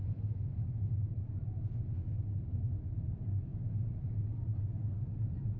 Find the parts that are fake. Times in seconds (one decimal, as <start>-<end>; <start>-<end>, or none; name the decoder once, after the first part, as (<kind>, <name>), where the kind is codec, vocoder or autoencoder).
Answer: none